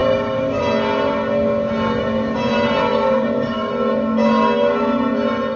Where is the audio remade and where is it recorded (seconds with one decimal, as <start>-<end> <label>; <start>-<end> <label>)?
0.0-0.6 remade; 0.6-2.9 recorded; 2.9-3.7 remade; 3.7-5.6 recorded